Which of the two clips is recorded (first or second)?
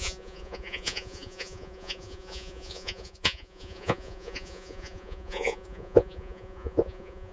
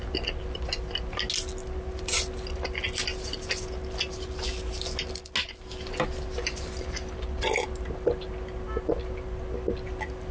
second